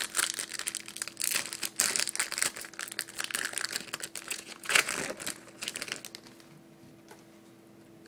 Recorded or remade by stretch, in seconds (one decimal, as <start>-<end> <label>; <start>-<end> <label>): 0.0-4.3 recorded; 4.3-4.9 remade; 4.9-8.1 recorded